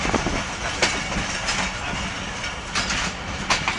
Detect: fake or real real